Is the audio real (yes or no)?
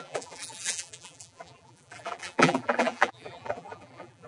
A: no